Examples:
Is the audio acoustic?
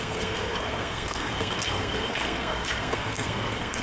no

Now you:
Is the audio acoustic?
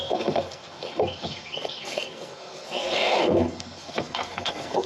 no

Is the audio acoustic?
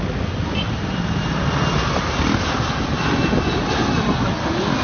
yes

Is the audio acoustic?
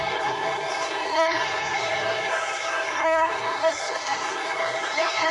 no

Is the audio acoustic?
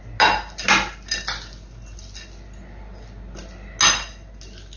yes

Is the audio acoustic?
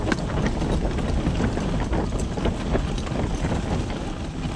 yes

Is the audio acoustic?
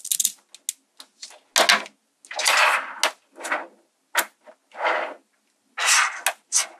yes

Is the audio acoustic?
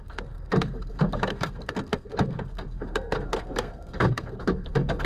no